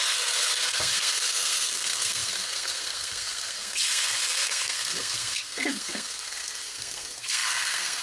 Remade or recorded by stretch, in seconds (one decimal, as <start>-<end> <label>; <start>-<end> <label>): 0.0-8.0 remade